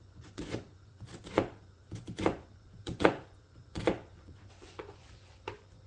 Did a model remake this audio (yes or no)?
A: yes